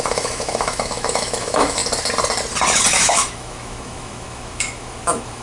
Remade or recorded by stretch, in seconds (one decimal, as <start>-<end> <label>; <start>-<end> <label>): 0.0-1.8 remade; 1.8-2.9 recorded; 2.9-5.4 remade